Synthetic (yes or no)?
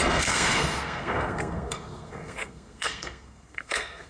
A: yes